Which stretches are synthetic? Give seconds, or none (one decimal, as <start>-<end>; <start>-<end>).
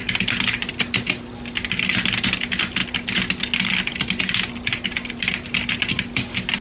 none